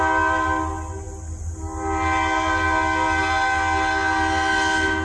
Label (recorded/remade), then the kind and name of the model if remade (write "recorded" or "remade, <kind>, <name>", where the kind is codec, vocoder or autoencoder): recorded